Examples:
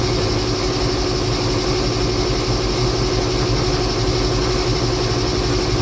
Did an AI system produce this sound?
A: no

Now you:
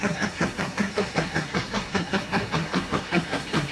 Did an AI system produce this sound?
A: yes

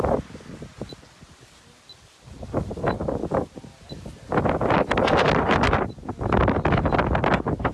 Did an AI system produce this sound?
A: no